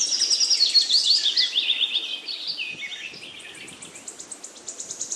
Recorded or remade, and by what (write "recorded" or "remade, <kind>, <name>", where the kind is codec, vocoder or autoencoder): recorded